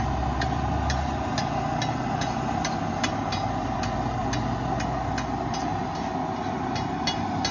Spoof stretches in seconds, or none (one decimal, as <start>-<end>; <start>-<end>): none